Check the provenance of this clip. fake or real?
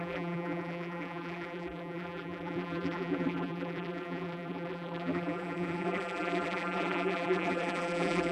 fake